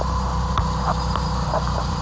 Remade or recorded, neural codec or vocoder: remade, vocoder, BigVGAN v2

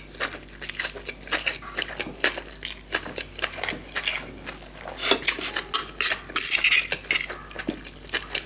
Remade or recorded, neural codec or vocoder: recorded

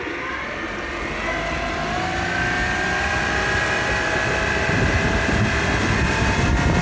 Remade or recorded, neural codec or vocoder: recorded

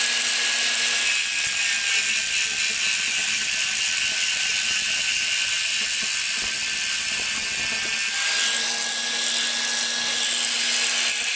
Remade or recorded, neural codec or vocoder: recorded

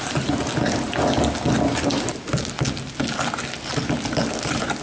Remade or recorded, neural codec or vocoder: recorded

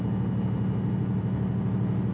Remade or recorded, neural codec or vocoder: recorded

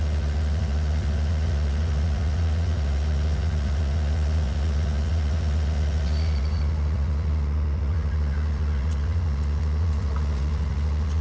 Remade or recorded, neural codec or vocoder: remade, vocoder, Vocos